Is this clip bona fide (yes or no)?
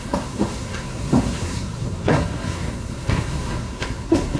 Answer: no